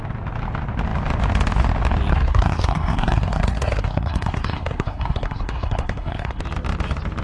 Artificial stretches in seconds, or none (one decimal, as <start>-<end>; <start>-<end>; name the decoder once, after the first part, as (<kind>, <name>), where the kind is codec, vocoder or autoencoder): 2.1-6.4 (codec, SNAC)